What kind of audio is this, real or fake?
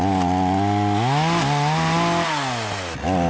real